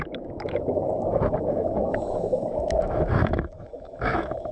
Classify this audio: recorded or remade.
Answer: remade